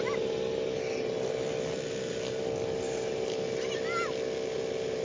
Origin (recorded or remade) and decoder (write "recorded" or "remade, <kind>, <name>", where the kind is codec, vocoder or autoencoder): recorded